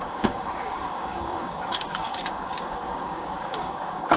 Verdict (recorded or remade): remade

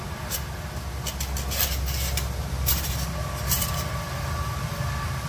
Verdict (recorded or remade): recorded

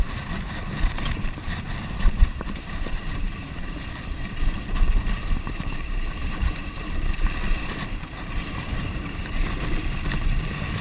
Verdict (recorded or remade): remade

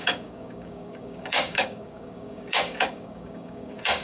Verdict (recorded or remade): remade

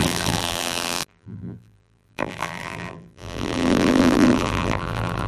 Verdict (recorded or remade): remade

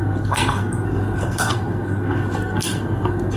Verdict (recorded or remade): remade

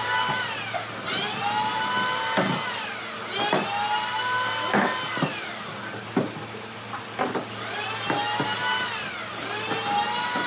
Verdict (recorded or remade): recorded